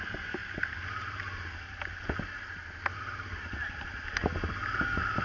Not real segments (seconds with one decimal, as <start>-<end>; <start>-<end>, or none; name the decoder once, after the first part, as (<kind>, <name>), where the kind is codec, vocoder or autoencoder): none